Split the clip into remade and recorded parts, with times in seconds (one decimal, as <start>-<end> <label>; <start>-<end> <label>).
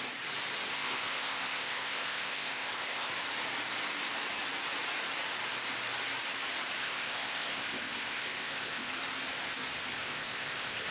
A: 0.0-0.7 recorded; 0.7-3.1 remade; 3.1-6.8 recorded; 6.8-8.9 remade; 8.9-9.9 recorded; 9.9-10.9 remade